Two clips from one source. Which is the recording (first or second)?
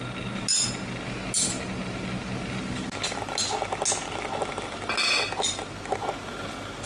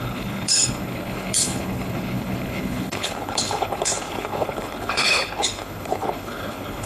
first